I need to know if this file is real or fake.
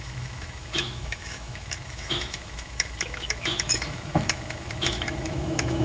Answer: fake